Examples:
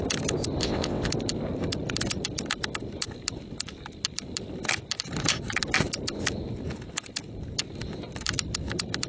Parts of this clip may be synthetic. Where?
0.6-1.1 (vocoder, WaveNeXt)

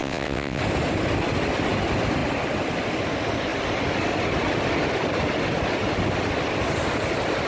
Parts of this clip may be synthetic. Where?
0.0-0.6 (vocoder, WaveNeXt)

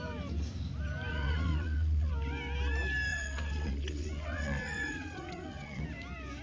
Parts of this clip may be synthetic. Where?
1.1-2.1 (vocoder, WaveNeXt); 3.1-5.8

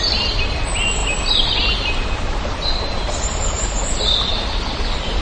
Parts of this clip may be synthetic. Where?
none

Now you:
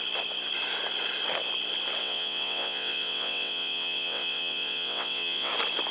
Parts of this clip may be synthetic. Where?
2.0-5.5 (vocoder, WaveNeXt)

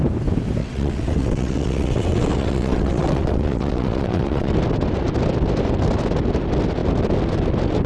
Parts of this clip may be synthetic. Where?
0.6-4.5 (vocoder, WaveNeXt)

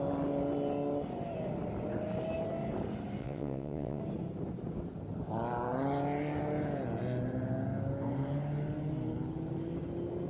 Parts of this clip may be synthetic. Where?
3.2-4.0 (vocoder, WaveNeXt)

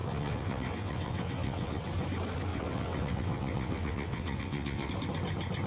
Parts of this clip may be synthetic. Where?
0.0-1.8 (vocoder, WaveNeXt); 2.5-4.9